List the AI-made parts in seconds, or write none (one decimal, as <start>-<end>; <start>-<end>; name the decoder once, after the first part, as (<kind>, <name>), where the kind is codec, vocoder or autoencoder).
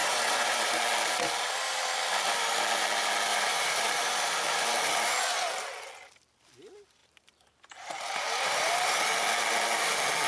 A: 0.0-0.8 (vocoder, BigVGAN v2); 3.3-4.1; 7.0-9.0